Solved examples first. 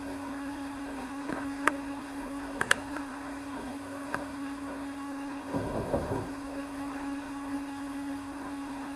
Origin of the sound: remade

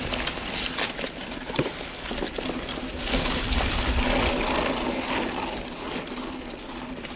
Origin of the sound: recorded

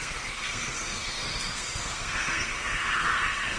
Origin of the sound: remade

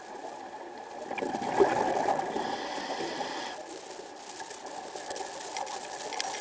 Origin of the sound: recorded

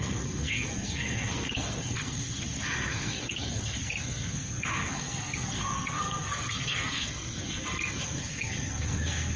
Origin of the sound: remade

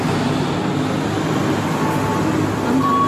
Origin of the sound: recorded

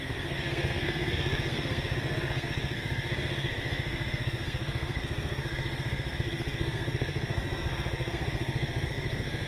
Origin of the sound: remade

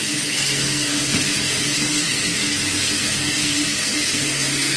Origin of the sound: remade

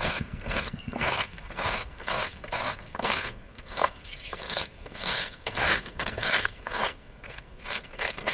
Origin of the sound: remade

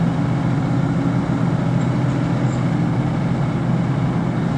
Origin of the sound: recorded